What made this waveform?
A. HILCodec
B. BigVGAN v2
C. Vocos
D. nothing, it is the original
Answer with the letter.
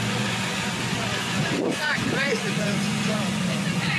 C